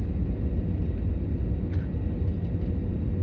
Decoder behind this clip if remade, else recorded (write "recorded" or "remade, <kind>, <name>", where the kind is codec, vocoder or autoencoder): recorded